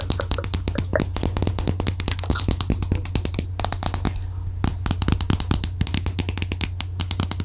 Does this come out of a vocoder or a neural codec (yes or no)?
no